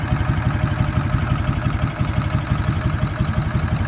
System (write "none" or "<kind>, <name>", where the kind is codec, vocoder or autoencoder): none